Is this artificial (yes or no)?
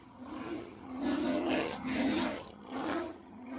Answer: yes